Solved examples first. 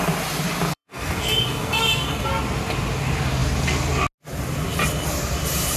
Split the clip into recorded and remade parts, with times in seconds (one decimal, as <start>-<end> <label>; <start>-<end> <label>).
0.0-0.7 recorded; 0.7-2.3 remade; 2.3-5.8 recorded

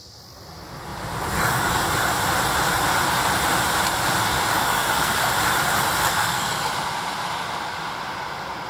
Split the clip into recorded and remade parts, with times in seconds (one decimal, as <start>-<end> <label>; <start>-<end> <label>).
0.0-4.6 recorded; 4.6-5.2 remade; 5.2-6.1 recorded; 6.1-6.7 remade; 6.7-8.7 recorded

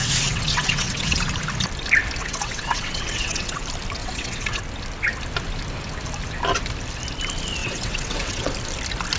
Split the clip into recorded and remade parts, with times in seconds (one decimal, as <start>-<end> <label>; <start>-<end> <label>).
0.0-1.3 remade; 1.3-2.2 recorded; 2.2-3.6 remade; 3.6-4.0 recorded; 4.0-4.6 remade; 4.6-7.6 recorded; 7.6-8.5 remade; 8.5-9.2 recorded

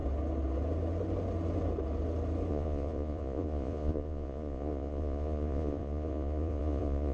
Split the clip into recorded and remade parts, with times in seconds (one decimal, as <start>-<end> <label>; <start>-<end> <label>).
0.0-2.5 recorded; 2.5-7.1 remade

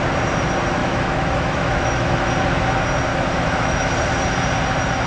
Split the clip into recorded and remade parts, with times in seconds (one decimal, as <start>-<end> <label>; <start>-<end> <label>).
0.0-0.8 recorded; 0.8-2.3 remade; 2.3-3.1 recorded; 3.1-3.8 remade; 3.8-5.1 recorded